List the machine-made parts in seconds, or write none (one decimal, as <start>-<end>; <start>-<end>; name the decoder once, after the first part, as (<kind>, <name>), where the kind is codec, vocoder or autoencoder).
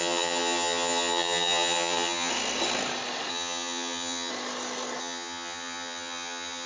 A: 0.0-2.3 (vocoder, HiFi-GAN); 3.3-4.3; 5.0-6.7